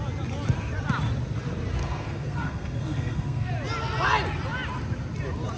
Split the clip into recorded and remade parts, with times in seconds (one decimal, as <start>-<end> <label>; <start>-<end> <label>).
0.0-1.8 recorded; 1.8-3.5 remade; 3.5-5.6 recorded